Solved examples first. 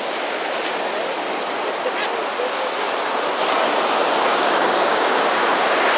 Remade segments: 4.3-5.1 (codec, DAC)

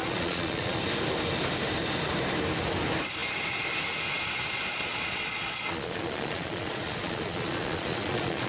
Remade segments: 0.0-0.8 (vocoder, Vocos); 4.7-8.5

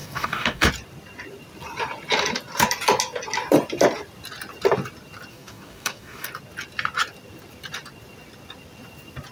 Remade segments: 0.0-0.7 (codec, DAC); 5.3-6.3

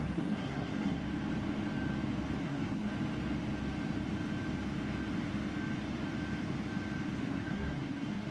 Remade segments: 0.0-1.0 (codec, SNAC); 2.4-2.9; 7.2-8.3